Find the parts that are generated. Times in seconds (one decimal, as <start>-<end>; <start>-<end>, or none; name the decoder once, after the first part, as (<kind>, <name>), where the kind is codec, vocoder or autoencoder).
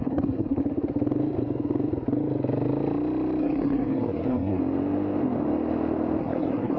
0.0-0.6 (codec, SNAC); 3.4-4.6; 6.2-6.8